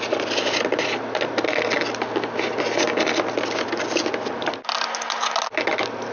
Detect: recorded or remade recorded